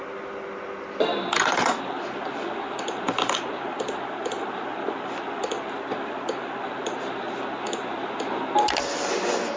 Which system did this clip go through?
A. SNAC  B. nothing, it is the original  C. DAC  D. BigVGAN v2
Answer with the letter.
B